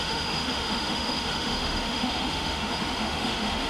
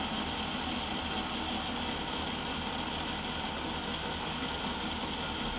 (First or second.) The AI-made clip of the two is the first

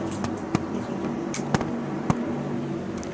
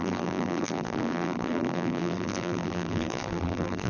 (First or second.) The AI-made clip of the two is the second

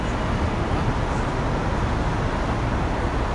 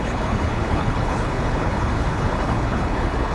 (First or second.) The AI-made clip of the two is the second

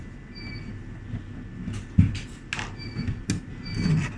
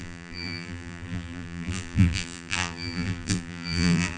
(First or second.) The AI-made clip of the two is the second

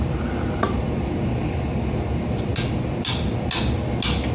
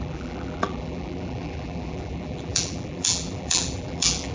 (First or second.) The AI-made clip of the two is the second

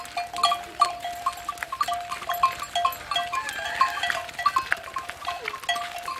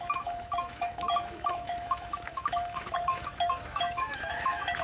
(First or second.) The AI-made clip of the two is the second